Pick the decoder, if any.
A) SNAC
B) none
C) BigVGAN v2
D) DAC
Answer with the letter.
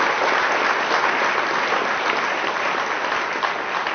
B